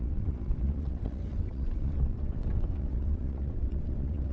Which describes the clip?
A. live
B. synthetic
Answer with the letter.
B